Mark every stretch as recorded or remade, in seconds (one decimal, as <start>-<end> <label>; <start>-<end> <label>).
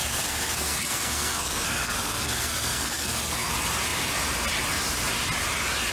0.0-3.5 remade; 3.5-5.9 recorded